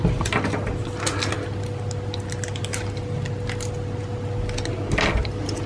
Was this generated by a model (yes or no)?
no